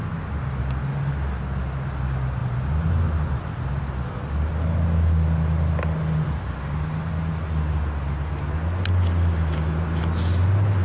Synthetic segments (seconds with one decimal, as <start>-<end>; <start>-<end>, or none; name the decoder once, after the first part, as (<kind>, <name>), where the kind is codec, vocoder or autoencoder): none